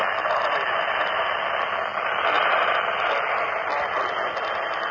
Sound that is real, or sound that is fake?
real